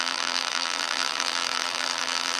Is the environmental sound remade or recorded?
remade